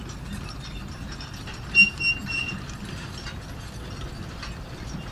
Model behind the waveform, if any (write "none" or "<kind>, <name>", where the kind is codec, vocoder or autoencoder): none